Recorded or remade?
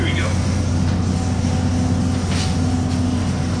recorded